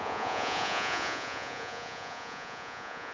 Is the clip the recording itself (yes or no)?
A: no